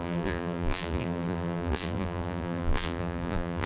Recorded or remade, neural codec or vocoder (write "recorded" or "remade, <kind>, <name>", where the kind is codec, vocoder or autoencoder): remade, vocoder, BigVGAN v2